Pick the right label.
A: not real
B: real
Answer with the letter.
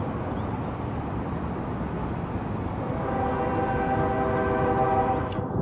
B